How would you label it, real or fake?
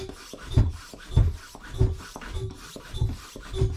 real